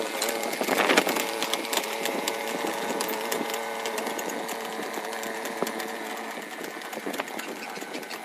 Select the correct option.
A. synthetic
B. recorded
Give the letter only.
A